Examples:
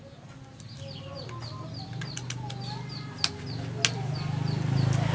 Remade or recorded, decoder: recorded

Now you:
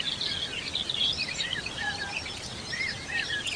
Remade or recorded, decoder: recorded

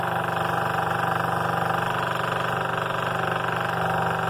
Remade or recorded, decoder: recorded